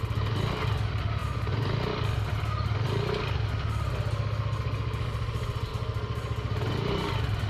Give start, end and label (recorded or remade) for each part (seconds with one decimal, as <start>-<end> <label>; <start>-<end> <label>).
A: 0.0-7.5 recorded